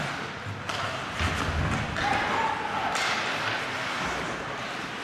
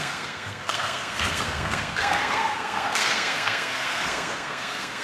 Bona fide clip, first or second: first